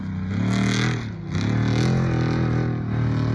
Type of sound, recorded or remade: recorded